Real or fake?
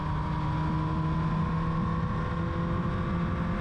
real